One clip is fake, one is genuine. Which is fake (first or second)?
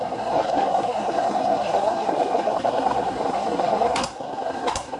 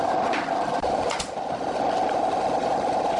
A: first